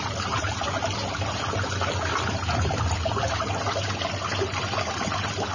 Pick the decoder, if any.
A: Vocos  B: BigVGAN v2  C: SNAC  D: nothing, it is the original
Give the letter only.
D